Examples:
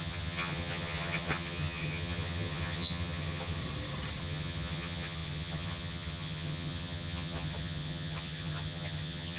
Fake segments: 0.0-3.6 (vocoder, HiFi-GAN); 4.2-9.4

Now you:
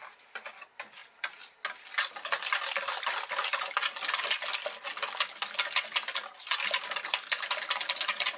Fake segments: none

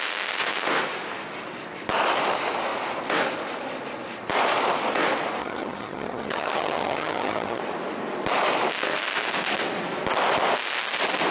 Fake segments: 5.4-7.6 (vocoder, HiFi-GAN)

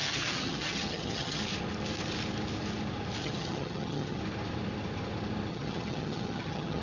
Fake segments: 0.0-1.4 (vocoder, HiFi-GAN); 3.2-4.2; 5.5-6.8

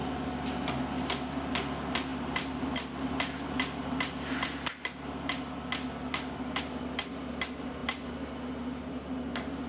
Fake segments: none